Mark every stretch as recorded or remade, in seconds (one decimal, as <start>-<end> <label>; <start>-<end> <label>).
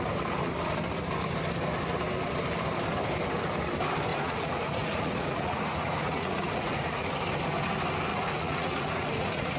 0.0-4.1 recorded; 4.1-7.1 remade; 7.1-8.1 recorded; 8.1-9.6 remade